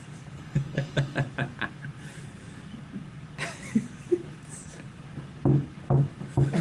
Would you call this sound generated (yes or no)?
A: yes